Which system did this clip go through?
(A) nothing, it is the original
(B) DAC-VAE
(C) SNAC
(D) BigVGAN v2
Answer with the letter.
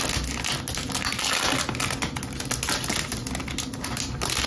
A